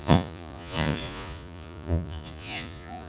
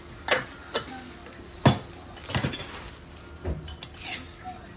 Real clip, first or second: second